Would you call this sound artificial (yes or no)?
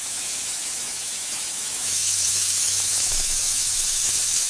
yes